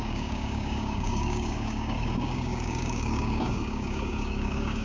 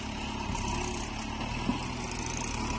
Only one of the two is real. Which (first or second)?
second